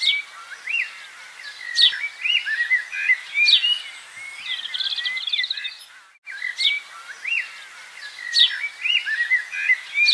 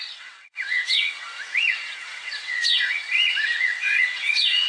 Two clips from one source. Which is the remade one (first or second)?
second